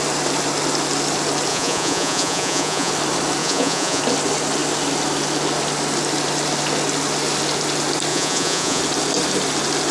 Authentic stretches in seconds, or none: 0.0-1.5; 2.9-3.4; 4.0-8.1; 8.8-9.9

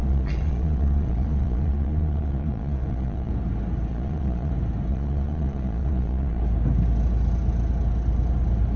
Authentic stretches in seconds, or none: 3.3-3.9; 4.5-4.9; 6.4-8.8